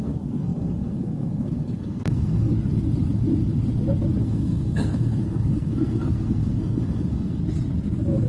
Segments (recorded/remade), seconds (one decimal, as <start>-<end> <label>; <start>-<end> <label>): 0.0-2.5 remade; 2.5-4.2 recorded; 4.2-7.4 remade; 7.4-8.3 recorded